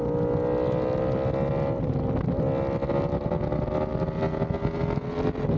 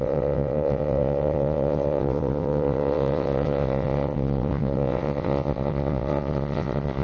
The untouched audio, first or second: first